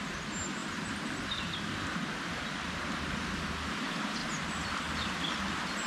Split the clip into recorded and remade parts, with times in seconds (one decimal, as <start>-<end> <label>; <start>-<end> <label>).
0.0-5.9 recorded